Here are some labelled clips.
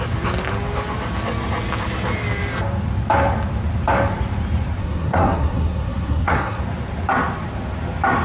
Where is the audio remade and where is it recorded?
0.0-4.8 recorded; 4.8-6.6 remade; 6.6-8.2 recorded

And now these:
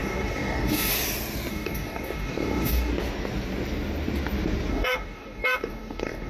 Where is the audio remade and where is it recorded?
0.0-0.9 remade; 0.9-1.5 recorded; 1.5-2.9 remade; 2.9-4.7 recorded; 4.7-6.3 remade

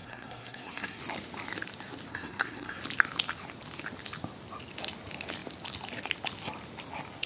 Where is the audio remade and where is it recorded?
0.0-1.0 remade; 1.0-2.1 recorded; 2.1-2.8 remade; 2.8-7.3 recorded

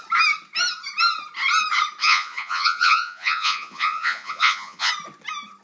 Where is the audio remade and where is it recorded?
0.0-2.0 recorded; 2.0-4.9 remade; 4.9-5.6 recorded